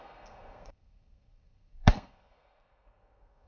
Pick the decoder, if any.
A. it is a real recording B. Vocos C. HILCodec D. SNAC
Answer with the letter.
D